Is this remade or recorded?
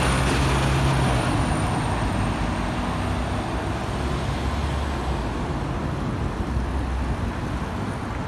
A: recorded